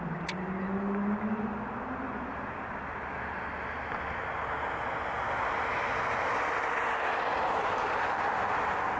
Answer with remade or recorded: recorded